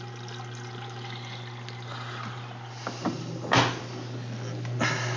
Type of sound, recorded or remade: recorded